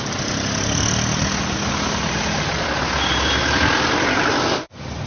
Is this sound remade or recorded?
recorded